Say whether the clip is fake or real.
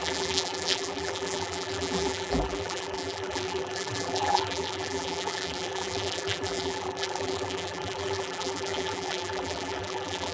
fake